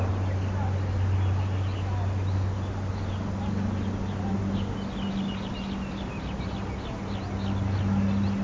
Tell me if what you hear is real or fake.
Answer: real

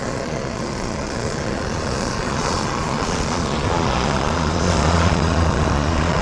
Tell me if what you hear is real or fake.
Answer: fake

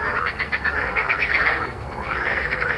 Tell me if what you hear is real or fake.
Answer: fake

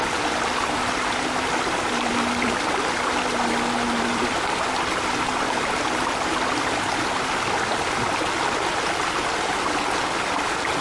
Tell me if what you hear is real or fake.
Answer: real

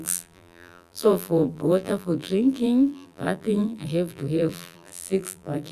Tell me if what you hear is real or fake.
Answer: fake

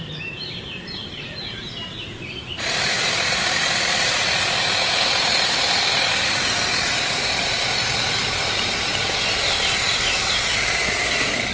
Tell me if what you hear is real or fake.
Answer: fake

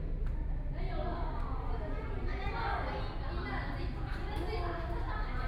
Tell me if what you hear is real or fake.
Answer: real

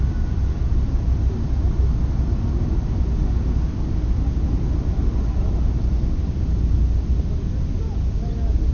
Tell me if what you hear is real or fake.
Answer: real